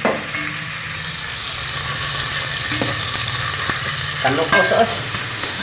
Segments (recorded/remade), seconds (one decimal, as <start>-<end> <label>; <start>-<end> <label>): 0.0-4.9 recorded; 4.9-5.6 remade